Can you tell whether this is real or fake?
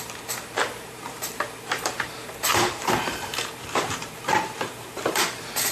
fake